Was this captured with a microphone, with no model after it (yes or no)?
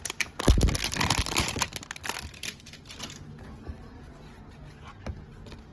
yes